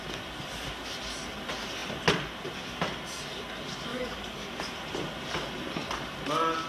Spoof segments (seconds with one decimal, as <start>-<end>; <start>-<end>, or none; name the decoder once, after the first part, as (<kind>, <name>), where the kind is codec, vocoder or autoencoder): 3.9-4.6 (codec, DAC)